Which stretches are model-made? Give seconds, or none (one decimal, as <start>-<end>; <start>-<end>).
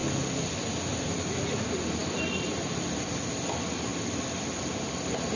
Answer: 2.0-3.2; 3.9-4.6